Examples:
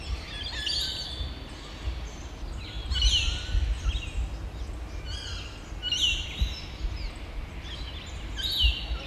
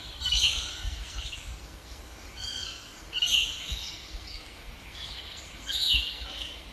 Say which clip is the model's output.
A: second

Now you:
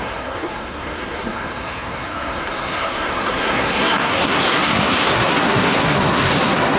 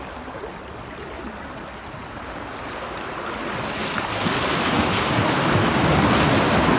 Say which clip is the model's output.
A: first